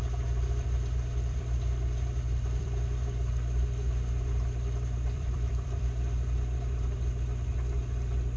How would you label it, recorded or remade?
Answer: remade